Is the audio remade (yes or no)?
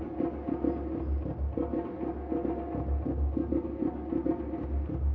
no